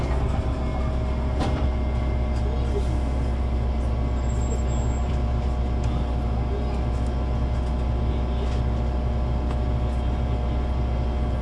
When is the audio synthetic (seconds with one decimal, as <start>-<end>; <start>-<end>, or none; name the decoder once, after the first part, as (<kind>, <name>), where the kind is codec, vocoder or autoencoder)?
none